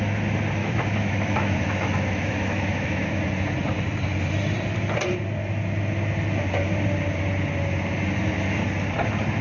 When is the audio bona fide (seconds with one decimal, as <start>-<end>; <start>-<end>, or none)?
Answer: 0.0-0.6; 3.1-9.4